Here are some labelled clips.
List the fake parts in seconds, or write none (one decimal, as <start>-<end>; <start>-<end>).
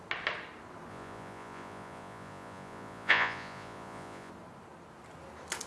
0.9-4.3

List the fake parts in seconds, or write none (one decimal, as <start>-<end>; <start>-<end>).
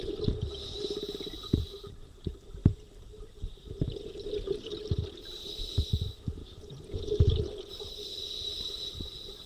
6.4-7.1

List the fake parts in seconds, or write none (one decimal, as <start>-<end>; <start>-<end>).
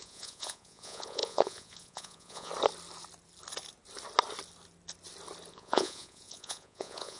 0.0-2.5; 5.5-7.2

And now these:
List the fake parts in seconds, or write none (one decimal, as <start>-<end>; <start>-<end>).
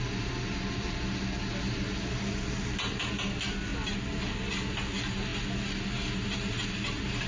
none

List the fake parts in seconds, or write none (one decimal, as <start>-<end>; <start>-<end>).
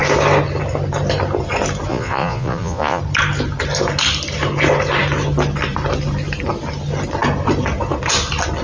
1.9-3.0